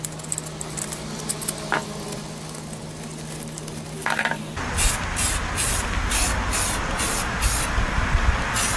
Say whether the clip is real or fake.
real